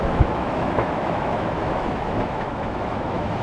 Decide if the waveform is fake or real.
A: fake